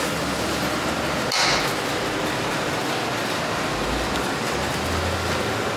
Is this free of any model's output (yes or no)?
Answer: yes